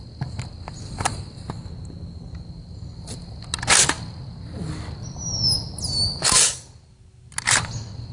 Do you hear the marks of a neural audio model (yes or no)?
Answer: no